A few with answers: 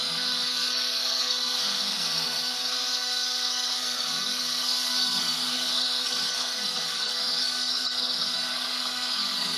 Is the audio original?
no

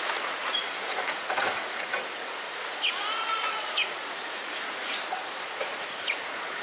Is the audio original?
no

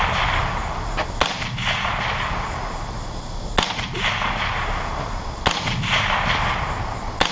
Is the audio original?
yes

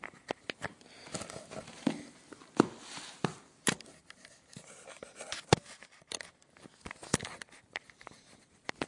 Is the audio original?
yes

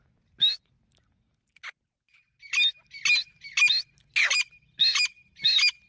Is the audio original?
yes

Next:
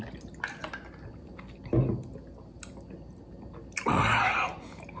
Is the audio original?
yes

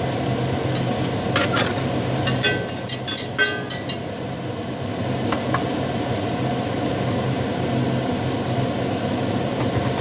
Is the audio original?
yes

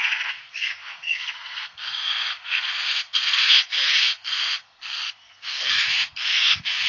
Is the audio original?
no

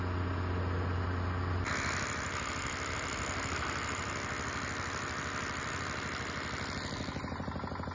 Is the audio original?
yes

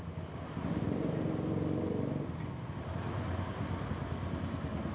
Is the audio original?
yes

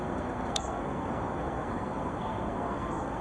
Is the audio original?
no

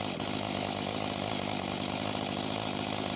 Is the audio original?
yes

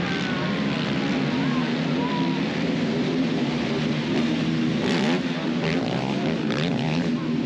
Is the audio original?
yes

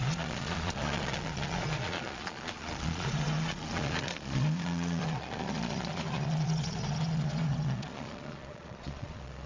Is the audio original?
no